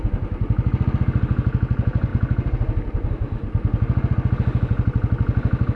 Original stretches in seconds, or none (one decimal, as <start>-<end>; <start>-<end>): 0.0-5.8